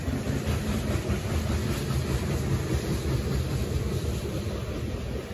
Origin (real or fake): fake